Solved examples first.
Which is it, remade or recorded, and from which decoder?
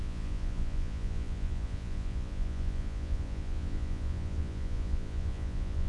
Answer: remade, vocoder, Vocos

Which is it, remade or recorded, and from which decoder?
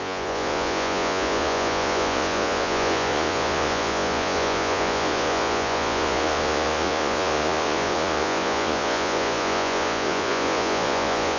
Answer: remade, vocoder, Vocos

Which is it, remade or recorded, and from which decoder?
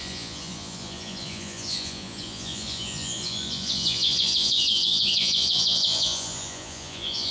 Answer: remade, vocoder, Vocos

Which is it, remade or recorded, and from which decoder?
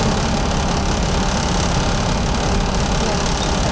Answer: recorded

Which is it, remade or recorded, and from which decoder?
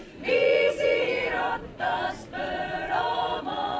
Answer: remade, vocoder, Vocos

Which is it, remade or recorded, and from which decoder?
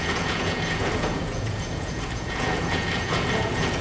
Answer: remade, vocoder, Vocos